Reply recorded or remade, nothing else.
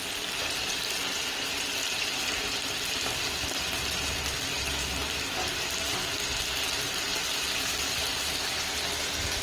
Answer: recorded